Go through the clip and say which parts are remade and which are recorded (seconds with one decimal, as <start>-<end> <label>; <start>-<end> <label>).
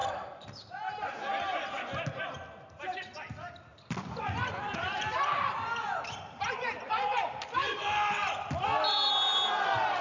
0.0-1.2 remade; 1.2-3.7 recorded; 3.7-8.5 remade; 8.5-10.0 recorded